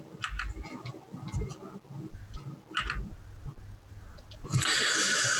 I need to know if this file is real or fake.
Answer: real